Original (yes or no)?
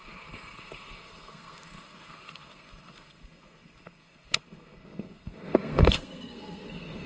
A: no